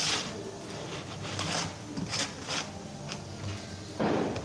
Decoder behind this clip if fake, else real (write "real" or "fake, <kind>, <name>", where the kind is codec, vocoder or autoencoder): real